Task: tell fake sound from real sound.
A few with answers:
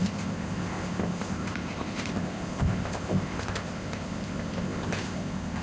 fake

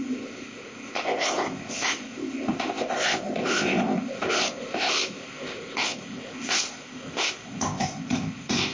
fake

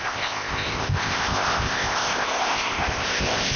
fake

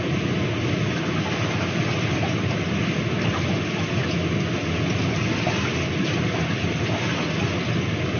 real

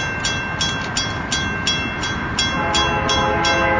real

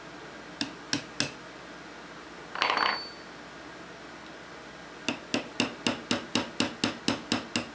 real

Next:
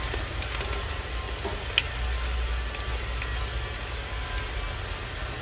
real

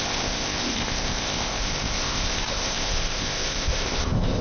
fake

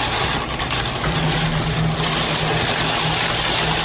real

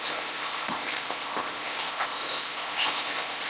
fake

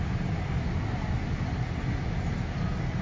real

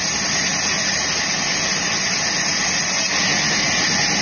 real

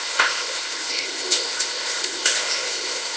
fake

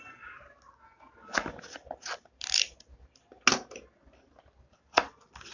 real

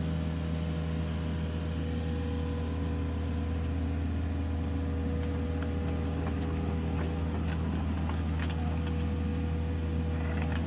real